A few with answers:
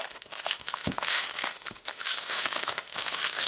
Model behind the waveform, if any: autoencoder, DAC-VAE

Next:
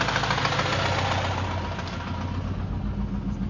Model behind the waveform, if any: none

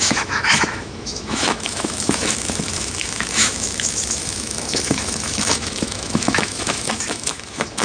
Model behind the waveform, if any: autoencoder, DAC-VAE